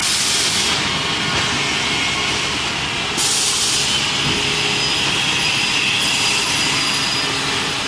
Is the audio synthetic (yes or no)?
no